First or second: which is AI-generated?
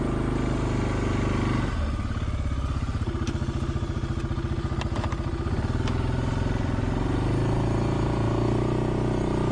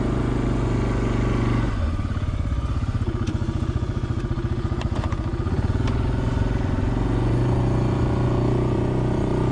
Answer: second